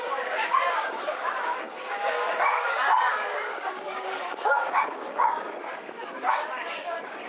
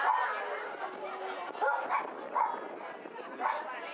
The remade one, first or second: first